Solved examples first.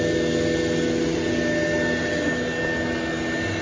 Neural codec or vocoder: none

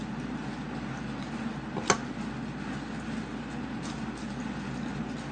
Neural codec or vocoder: none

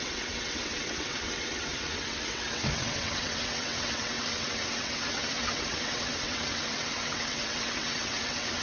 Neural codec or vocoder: vocoder, WaveNeXt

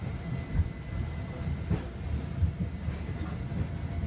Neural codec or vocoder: none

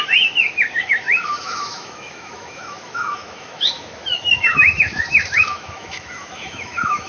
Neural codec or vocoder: autoencoder, DAC-VAE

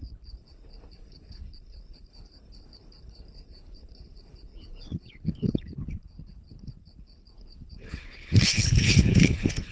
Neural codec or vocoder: codec, HILCodec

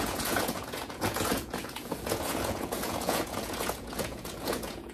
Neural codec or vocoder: vocoder, Vocos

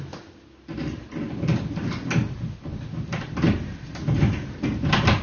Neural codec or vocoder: none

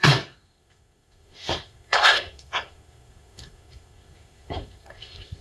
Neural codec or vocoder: codec, SNAC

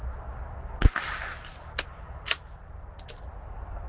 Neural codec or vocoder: none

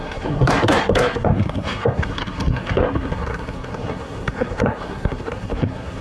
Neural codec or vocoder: codec, SNAC